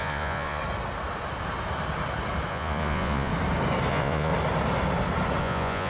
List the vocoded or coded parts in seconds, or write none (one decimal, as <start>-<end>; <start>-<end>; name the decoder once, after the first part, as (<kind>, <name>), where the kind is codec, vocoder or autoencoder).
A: 0.0-0.6 (vocoder, Vocos); 2.5-3.3; 3.9-4.3; 5.4-5.9